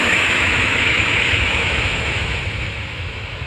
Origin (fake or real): fake